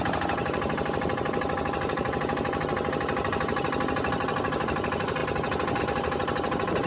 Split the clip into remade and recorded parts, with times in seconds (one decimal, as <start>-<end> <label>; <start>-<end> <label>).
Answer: 0.0-6.9 recorded